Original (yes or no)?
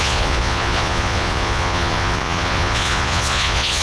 no